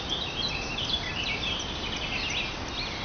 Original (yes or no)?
yes